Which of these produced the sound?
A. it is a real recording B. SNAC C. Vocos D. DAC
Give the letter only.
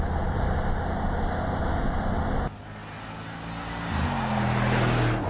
A